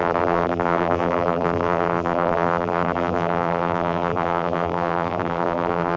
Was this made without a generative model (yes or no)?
no